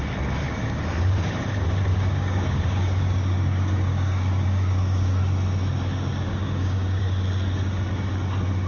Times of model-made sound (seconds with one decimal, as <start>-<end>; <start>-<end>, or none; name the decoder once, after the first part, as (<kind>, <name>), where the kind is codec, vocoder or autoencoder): 1.9-5.2 (codec, DAC); 6.3-7.0